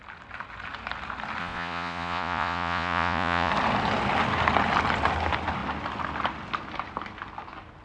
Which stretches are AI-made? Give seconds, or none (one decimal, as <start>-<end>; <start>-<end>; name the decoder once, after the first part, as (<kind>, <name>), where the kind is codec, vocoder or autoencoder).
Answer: 1.4-3.5 (vocoder, Vocos)